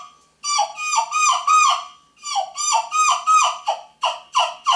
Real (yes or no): yes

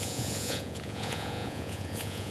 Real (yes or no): no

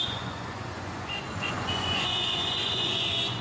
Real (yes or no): no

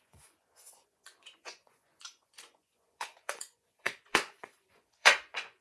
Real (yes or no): no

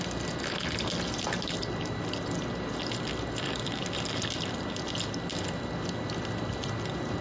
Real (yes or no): yes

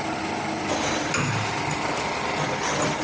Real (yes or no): yes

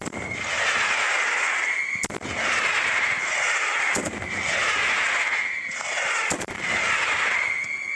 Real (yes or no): yes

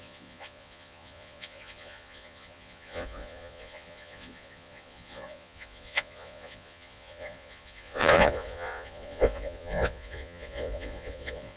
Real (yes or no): no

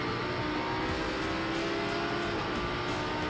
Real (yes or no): yes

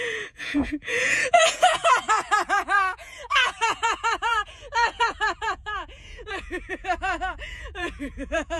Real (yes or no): no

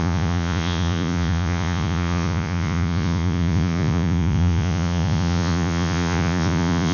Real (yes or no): no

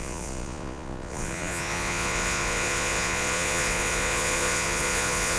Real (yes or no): no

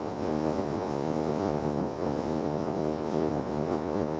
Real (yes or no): no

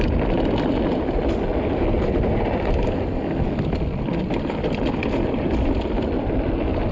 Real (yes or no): yes